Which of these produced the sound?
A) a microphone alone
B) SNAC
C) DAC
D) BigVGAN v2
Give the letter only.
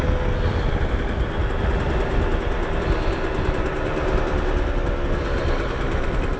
D